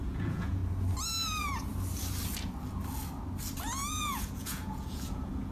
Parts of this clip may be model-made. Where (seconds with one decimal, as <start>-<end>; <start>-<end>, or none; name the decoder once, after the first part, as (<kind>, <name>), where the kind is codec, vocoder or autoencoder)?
0.0-0.6 (vocoder, Vocos); 3.9-5.5